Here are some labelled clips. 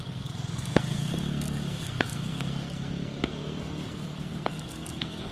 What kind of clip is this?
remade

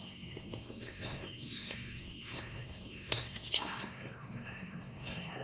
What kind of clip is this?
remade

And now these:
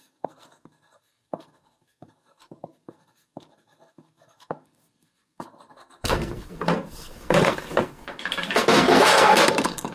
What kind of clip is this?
remade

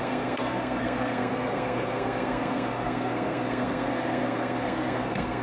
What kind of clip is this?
remade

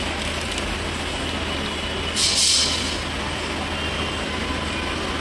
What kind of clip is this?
recorded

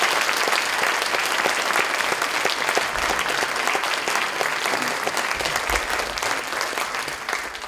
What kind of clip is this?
recorded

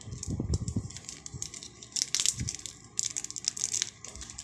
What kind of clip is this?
recorded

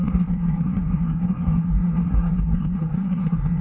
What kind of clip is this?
remade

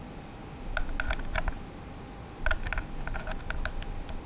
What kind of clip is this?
recorded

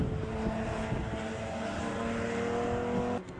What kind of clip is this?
recorded